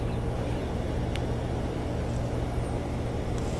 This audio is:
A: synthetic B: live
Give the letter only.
B